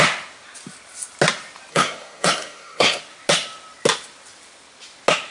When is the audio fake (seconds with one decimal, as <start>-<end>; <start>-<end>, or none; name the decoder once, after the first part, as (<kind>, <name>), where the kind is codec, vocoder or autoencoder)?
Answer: 1.7-3.0 (codec, SNAC)